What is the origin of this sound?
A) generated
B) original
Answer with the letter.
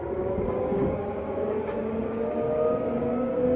A